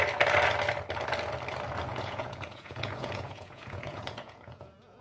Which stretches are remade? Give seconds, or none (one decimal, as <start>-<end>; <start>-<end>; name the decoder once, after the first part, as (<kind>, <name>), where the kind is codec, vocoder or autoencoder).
1.9-5.0 (vocoder, Vocos)